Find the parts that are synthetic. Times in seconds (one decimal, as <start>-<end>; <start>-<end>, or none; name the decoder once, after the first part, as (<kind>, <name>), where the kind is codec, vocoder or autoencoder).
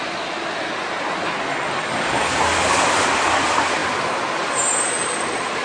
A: 1.5-2.3 (codec, DAC)